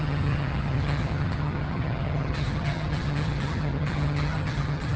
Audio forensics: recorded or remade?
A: remade